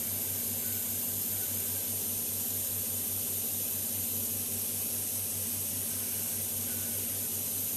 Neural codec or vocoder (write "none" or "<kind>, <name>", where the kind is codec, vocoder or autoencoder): none